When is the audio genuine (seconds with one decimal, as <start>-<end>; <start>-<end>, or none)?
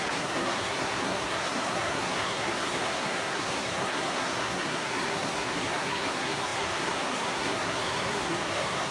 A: none